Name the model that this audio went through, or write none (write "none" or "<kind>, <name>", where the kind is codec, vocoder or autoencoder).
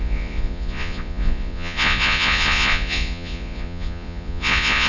vocoder, Vocos